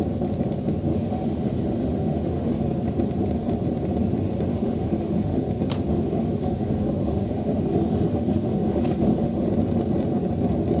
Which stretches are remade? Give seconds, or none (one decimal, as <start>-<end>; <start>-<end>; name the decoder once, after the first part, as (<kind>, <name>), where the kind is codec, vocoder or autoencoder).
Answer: 0.9-2.6 (autoencoder, DAC-VAE); 4.5-5.5; 5.9-9.5